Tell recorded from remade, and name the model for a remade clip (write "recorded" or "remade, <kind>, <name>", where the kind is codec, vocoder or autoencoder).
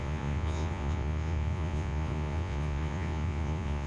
remade, vocoder, Vocos